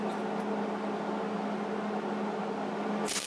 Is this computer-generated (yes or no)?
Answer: no